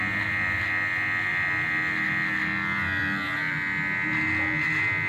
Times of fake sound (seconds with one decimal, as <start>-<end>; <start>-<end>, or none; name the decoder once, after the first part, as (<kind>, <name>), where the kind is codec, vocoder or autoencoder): none